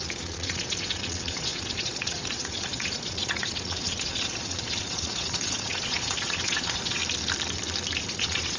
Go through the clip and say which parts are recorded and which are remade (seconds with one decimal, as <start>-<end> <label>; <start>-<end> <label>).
0.0-7.0 remade; 7.0-8.1 recorded; 8.1-8.6 remade